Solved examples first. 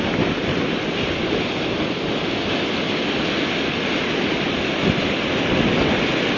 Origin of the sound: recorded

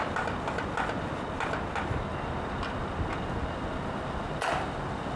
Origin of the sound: recorded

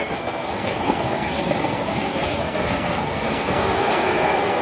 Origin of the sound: remade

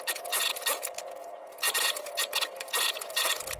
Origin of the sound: remade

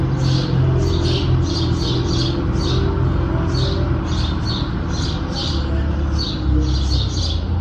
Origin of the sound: recorded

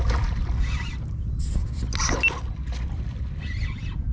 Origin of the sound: recorded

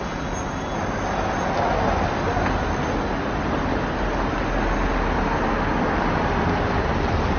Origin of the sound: recorded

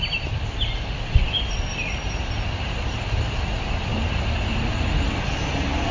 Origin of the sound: recorded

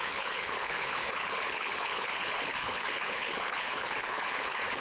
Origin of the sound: remade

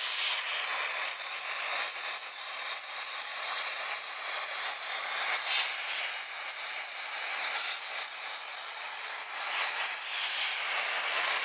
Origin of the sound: recorded